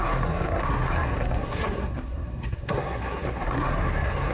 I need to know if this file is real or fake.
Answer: fake